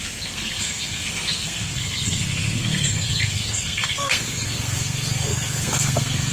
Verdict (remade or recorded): remade